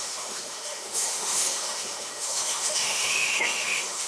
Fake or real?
fake